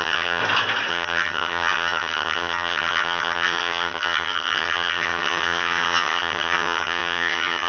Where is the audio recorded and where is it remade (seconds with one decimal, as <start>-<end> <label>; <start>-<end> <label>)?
0.0-0.4 remade; 0.4-0.9 recorded; 0.9-7.7 remade